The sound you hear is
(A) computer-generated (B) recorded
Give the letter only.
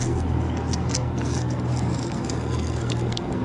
A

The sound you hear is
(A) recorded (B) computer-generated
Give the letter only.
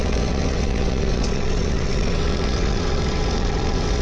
B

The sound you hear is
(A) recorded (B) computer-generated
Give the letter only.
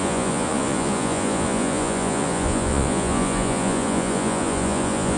B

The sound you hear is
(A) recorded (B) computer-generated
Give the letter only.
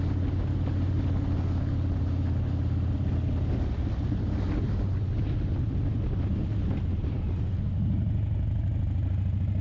A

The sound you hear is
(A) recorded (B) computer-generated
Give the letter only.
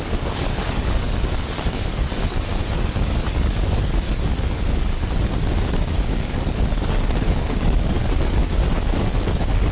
B